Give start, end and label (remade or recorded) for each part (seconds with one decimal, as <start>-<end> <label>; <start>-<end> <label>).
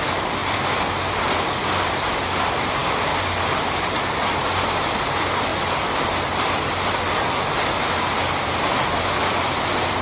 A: 0.0-10.0 recorded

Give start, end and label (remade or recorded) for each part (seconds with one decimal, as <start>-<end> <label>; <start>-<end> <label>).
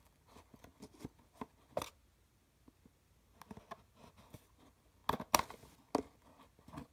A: 0.0-6.9 recorded